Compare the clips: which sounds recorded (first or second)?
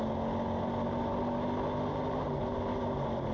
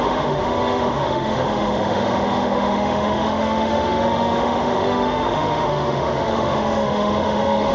first